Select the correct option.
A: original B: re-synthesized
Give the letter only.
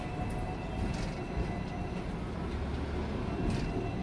A